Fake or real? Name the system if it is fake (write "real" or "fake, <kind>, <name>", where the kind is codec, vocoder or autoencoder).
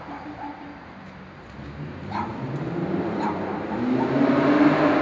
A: real